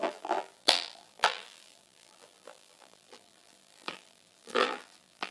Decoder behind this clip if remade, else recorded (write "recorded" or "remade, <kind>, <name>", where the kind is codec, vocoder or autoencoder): remade, vocoder, BigVGAN v2